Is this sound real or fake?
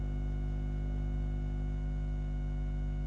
real